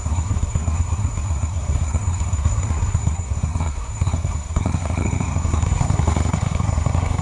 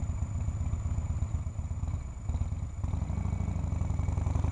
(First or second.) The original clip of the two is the second